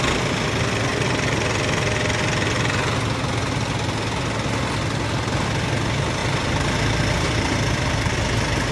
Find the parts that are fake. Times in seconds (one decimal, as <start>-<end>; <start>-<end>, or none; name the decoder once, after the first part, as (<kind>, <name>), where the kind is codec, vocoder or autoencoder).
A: 6.2-8.7 (vocoder, BigVGAN v2)